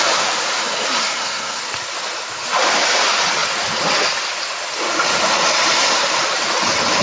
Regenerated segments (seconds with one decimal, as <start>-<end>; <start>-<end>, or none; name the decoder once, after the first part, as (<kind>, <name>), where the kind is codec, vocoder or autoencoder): 1.0-1.6 (codec, SNAC)